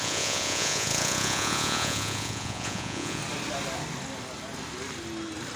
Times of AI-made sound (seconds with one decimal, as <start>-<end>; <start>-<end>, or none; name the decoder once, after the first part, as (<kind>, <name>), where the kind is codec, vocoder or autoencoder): 0.0-3.2 (vocoder, Vocos)